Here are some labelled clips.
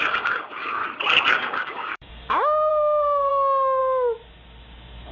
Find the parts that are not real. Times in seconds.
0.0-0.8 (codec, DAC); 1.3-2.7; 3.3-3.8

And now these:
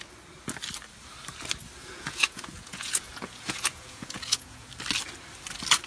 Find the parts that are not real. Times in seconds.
1.8-4.7 (vocoder, Vocos)

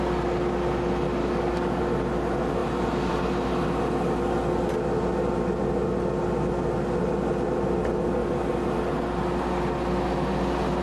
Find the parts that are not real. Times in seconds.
1.2-1.8 (codec, DAC)

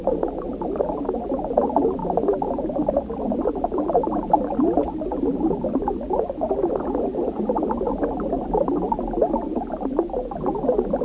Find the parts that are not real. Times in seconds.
none

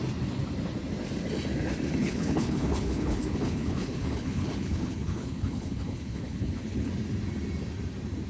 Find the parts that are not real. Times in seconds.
2.0-6.9 (codec, HILCodec)

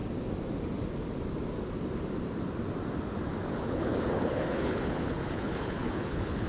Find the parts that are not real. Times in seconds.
3.5-6.5 (codec, HILCodec)